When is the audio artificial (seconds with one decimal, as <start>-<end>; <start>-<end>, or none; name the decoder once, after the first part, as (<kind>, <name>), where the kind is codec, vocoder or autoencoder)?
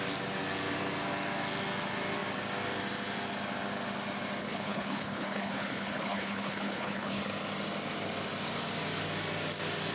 4.4-7.2 (codec, HILCodec)